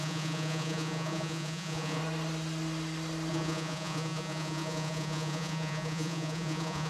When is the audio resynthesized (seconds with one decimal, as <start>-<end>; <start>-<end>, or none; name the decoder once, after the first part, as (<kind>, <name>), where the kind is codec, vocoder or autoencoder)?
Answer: 0.0-2.0 (vocoder, Vocos); 3.3-6.9